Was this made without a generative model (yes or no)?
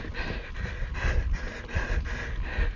yes